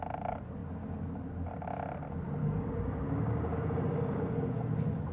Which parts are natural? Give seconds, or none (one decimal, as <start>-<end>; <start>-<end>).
0.0-2.4; 4.5-5.1